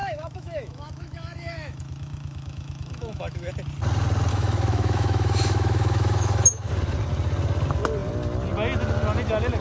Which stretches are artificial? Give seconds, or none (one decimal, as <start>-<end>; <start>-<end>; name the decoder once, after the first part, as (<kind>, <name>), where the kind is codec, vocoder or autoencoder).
0.0-3.5 (autoencoder, DAC-VAE); 4.3-6.7